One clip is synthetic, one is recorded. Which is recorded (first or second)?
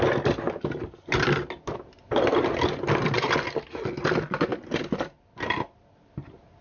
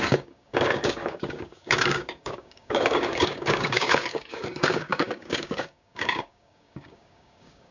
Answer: first